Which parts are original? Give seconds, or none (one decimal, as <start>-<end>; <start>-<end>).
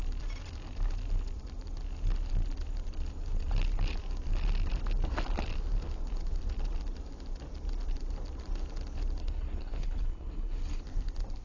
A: 0.0-9.2; 10.8-11.4